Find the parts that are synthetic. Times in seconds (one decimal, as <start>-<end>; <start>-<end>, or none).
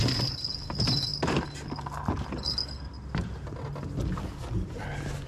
none